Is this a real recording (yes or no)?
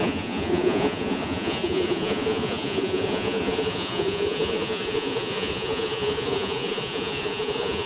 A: no